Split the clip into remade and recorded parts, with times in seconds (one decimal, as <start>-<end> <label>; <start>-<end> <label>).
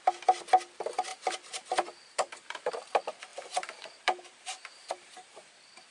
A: 0.0-1.1 recorded; 1.1-2.7 remade; 2.7-3.3 recorded; 3.3-5.5 remade; 5.5-5.9 recorded